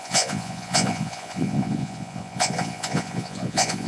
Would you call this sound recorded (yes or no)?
no